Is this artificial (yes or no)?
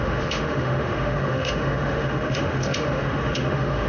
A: yes